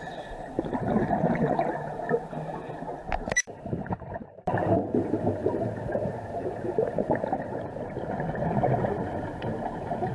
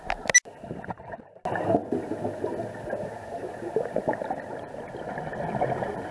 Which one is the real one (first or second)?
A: second